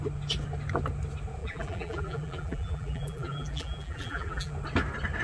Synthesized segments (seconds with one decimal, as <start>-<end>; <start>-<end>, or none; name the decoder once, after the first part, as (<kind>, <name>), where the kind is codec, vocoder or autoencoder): 1.4-4.5 (vocoder, BigVGAN v2)

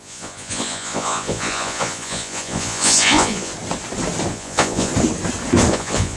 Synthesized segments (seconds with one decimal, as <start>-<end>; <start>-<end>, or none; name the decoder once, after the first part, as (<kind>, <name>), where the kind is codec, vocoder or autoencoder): 0.0-3.5 (vocoder, Vocos); 4.3-4.9; 5.7-6.2

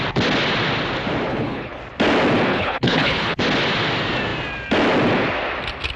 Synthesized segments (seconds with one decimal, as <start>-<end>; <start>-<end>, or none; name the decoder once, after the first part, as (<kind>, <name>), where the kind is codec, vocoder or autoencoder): 1.3-1.8 (codec, HILCodec); 2.5-3.4

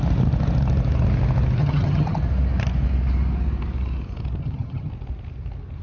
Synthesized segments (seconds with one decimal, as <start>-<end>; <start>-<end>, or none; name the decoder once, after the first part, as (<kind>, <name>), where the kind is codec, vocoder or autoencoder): 1.6-2.2 (vocoder, HiFi-GAN); 4.4-4.9

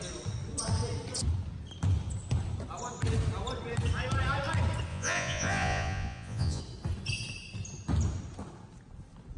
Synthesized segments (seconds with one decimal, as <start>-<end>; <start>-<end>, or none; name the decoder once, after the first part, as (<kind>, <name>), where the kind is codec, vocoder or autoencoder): 4.9-6.6 (vocoder, Vocos)

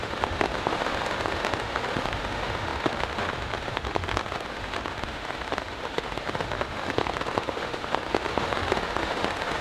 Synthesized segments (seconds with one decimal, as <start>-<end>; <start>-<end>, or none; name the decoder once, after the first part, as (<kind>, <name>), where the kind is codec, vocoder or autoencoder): 0.0-9.6 (autoencoder, DAC-VAE)